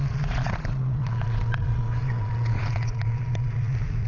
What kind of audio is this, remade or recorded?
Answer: remade